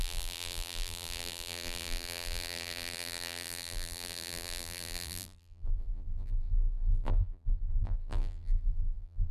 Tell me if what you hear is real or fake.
fake